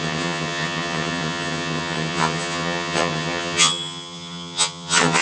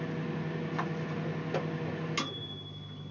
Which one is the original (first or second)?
second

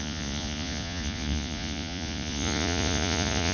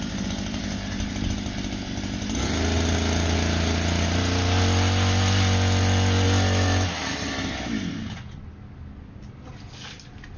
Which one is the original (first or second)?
second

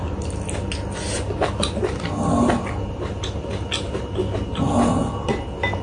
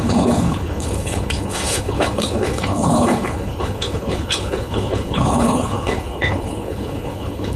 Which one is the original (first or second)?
first